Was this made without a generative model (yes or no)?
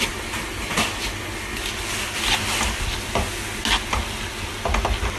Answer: yes